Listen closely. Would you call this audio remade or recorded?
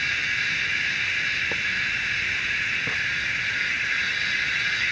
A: recorded